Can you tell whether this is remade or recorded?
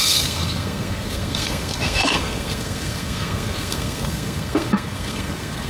remade